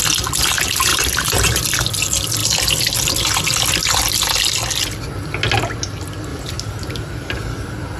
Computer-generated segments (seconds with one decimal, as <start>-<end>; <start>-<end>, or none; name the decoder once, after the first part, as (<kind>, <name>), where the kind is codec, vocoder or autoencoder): 0.9-1.6 (vocoder, BigVGAN v2); 6.3-6.9

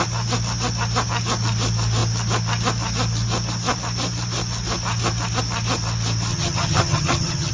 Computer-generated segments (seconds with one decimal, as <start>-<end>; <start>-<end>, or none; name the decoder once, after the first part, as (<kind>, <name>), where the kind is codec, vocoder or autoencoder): 6.3-7.5 (vocoder, HiFi-GAN)